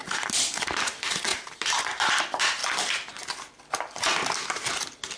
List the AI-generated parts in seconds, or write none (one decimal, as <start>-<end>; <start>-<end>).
0.0-0.8; 1.3-2.2